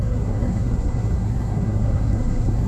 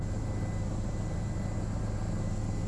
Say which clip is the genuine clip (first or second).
second